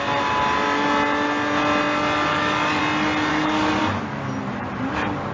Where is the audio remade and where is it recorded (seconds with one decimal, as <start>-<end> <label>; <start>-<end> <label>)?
0.0-2.3 recorded; 2.3-2.8 remade; 2.8-3.3 recorded; 3.3-3.8 remade; 3.8-5.3 recorded